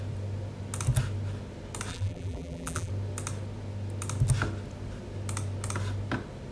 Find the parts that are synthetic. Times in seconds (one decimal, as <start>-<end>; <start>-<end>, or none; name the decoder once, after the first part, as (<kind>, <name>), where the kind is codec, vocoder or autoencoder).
1.9-2.9 (vocoder, BigVGAN v2)